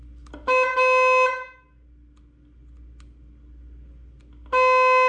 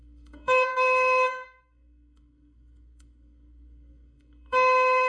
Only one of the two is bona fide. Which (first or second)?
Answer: first